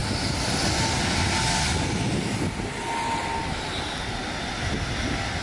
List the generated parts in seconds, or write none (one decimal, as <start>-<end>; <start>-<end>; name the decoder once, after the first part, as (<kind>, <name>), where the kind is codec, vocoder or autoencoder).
none